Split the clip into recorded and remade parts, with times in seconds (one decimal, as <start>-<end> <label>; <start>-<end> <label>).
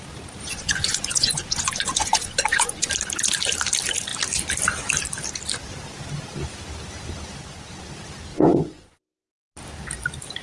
0.0-0.5 recorded; 0.5-2.9 remade; 2.9-8.3 recorded; 8.3-9.3 remade; 9.3-10.4 recorded